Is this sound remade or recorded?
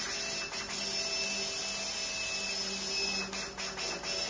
recorded